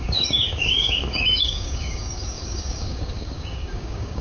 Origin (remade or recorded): remade